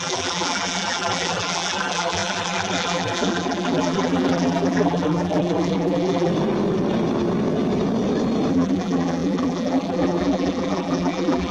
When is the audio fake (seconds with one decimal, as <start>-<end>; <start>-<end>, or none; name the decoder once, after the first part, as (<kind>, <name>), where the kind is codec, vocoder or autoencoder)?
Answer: 0.0-6.3 (vocoder, BigVGAN v2); 8.5-11.5